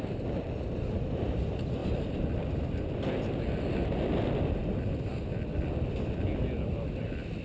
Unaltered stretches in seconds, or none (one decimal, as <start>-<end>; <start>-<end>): 0.0-7.4